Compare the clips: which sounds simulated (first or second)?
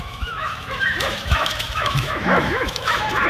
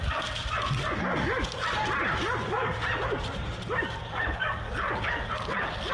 first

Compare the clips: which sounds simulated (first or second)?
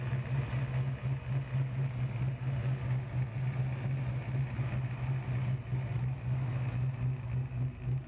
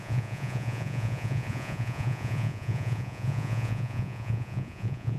second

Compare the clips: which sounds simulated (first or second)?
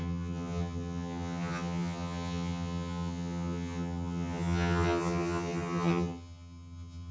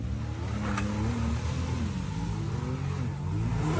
first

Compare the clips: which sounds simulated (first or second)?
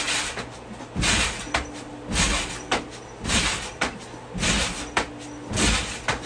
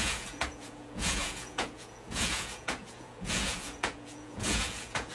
second